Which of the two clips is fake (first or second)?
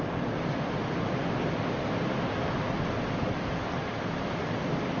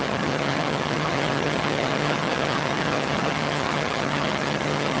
second